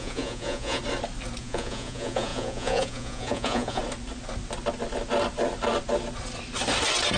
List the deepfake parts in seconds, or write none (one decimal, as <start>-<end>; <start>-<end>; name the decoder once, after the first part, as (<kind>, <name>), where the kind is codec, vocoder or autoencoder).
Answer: 0.0-0.8 (vocoder, Vocos); 1.4-3.8